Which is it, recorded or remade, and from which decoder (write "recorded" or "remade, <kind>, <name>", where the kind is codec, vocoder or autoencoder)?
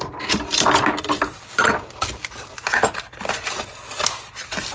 recorded